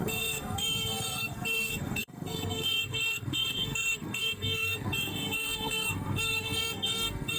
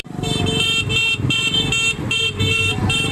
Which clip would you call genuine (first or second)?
second